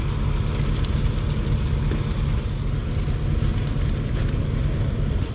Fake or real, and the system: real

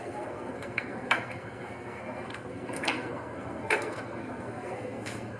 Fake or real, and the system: fake, codec, SNAC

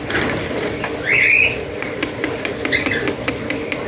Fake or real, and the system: real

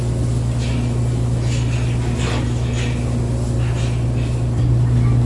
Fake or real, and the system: real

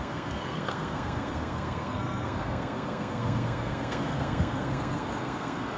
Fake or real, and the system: fake, codec, SNAC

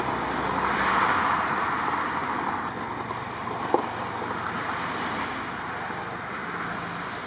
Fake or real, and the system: real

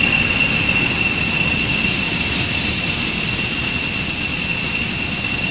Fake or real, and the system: real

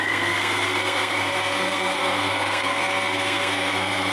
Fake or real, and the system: fake, codec, SNAC